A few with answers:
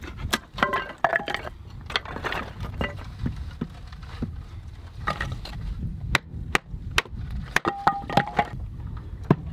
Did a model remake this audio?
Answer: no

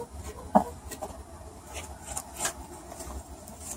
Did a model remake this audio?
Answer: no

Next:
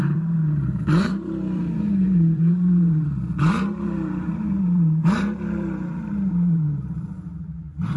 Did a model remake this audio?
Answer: yes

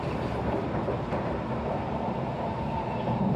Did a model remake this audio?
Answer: yes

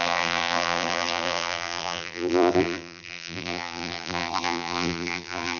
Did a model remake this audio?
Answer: yes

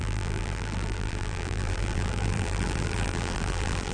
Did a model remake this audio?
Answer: yes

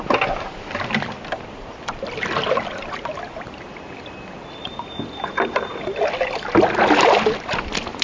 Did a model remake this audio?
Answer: no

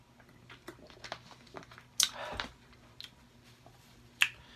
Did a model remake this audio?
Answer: no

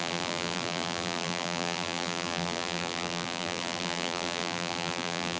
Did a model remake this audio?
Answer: yes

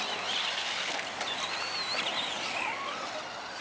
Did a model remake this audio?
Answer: no